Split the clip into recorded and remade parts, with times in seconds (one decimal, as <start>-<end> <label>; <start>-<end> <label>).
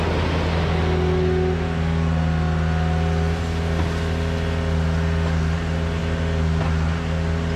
0.0-7.6 recorded